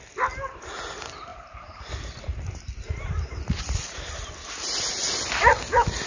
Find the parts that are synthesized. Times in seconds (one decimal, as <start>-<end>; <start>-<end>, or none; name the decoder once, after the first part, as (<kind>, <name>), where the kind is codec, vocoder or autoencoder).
1.3-4.3 (vocoder, BigVGAN v2)